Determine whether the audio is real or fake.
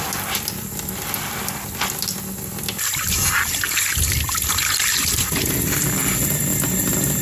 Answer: real